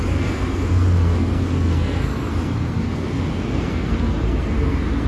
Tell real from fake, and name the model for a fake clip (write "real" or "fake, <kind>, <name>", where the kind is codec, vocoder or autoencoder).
fake, codec, SNAC